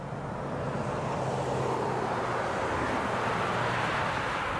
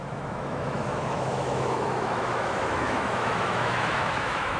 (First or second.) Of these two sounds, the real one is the first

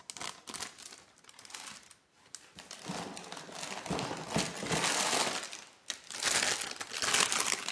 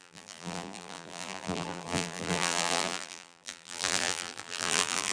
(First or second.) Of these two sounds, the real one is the first